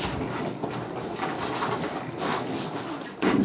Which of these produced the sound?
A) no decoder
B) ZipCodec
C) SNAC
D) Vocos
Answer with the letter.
A